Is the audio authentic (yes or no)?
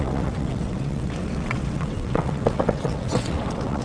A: no